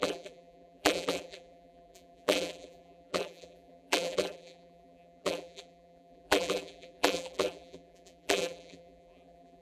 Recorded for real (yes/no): no